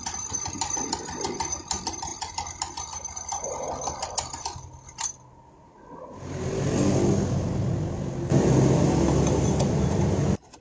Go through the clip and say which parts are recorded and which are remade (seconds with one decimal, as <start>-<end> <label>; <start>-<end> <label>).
0.0-10.6 recorded